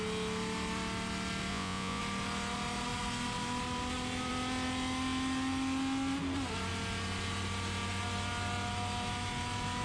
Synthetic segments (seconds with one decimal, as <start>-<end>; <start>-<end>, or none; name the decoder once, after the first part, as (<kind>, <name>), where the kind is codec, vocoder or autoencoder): 1.5-2.0 (vocoder, Vocos)